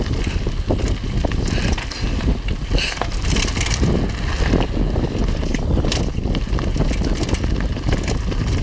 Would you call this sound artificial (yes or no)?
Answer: no